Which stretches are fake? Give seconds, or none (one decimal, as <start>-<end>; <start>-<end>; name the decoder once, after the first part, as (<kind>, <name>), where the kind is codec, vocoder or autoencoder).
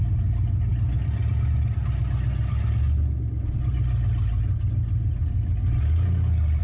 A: none